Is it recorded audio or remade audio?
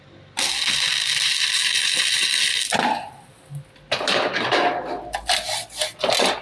recorded